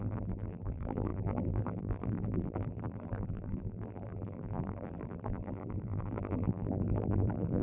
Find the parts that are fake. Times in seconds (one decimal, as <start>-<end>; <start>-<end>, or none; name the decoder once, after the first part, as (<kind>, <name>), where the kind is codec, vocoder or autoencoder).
0.0-7.6 (vocoder, BigVGAN v2)